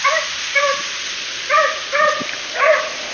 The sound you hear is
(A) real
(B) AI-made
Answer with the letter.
B